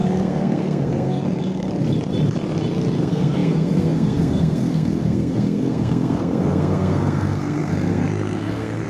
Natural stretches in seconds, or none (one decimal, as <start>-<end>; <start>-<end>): 1.7-3.0